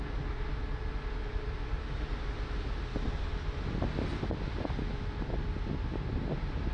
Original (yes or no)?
yes